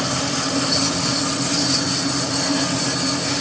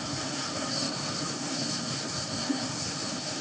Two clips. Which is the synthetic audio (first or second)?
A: second